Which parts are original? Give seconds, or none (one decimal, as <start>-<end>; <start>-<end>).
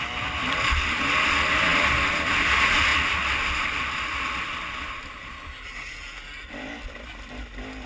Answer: 0.0-7.9